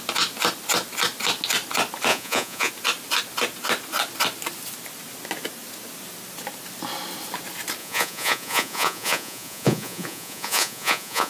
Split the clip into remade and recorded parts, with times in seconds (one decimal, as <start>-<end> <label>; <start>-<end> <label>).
0.0-2.1 recorded; 2.1-2.7 remade; 2.7-7.8 recorded; 7.8-11.3 remade